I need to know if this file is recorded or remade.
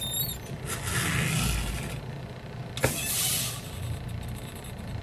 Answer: recorded